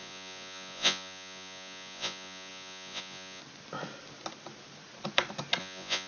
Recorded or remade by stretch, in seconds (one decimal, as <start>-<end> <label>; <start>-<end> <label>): 0.0-3.4 remade; 3.4-5.6 recorded; 5.6-6.1 remade